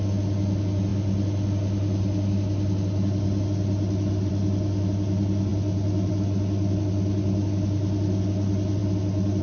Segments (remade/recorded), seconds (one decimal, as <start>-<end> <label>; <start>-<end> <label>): 0.0-9.4 recorded

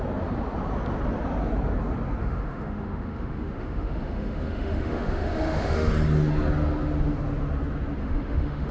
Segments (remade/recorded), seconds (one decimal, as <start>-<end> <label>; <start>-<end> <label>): 0.0-2.2 recorded; 2.2-5.9 remade; 5.9-8.0 recorded; 8.0-8.7 remade

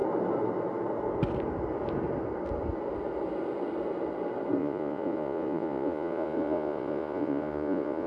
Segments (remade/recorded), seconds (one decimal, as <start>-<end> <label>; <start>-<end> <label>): 0.0-4.6 recorded; 4.6-8.1 remade

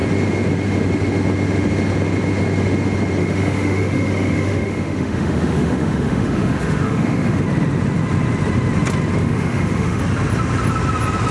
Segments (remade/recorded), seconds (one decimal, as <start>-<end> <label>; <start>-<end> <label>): 0.0-3.2 recorded; 3.2-7.4 remade; 7.4-9.2 recorded; 9.2-10.0 remade; 10.0-11.3 recorded

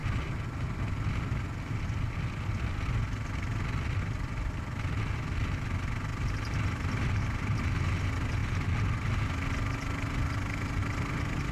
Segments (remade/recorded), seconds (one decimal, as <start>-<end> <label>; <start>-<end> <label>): 0.0-6.1 recorded; 6.1-7.6 remade; 7.6-11.5 recorded

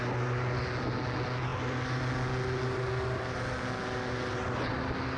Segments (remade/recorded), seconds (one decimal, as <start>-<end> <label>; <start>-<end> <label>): 0.0-5.2 recorded